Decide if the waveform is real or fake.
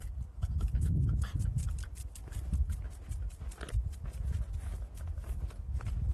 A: real